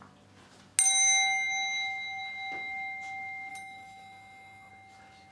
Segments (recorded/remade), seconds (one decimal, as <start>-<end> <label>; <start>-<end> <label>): 0.0-3.5 recorded; 3.5-4.7 remade; 4.7-5.3 recorded